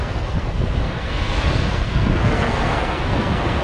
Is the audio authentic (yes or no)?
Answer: no